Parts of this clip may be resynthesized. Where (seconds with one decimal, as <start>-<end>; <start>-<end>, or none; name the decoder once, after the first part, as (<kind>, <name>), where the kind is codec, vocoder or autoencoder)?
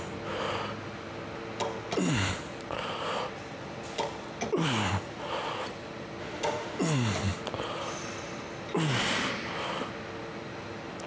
6.2-6.8 (autoencoder, DAC-VAE)